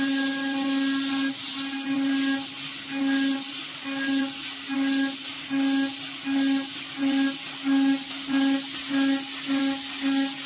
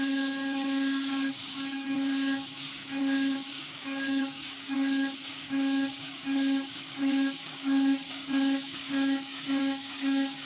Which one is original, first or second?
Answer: first